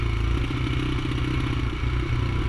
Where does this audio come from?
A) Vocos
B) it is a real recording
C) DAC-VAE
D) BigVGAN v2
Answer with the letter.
B